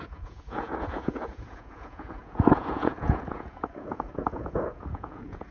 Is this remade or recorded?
remade